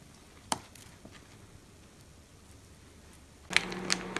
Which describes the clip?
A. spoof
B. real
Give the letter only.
B